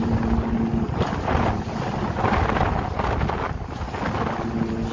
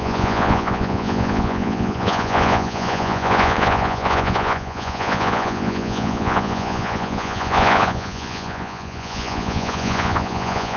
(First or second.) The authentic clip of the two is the first